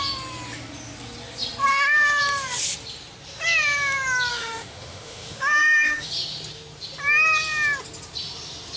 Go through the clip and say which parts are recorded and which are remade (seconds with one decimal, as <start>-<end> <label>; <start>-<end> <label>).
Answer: 0.0-1.7 recorded; 1.7-2.2 remade; 2.2-4.3 recorded; 4.3-6.1 remade; 6.1-8.8 recorded